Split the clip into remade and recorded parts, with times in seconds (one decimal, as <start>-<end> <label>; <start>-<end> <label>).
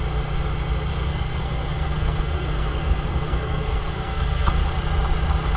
0.0-1.1 recorded; 1.1-4.5 remade; 4.5-5.6 recorded